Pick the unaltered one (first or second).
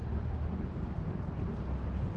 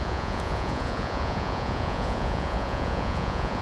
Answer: first